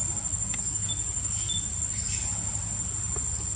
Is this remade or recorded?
recorded